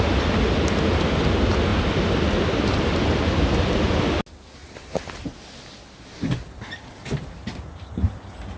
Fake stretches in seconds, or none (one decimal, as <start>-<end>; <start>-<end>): none